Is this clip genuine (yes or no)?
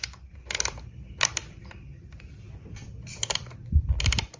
no